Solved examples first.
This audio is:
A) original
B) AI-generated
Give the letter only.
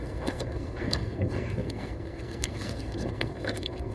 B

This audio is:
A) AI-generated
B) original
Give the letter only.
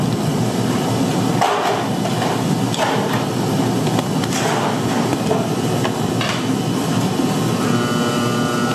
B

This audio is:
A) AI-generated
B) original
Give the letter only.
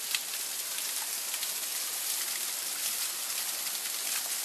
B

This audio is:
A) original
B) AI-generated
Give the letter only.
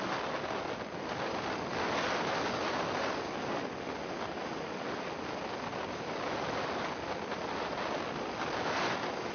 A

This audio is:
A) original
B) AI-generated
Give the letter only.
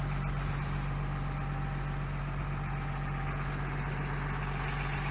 A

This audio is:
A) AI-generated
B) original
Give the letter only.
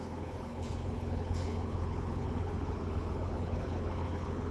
A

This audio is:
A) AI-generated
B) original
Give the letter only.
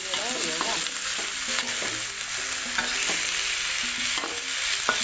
B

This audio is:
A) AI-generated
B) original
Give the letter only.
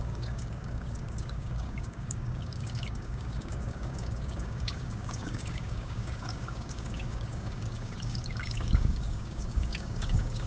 A